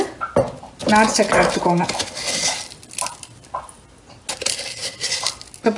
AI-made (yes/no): no